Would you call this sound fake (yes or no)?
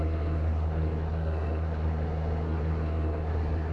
yes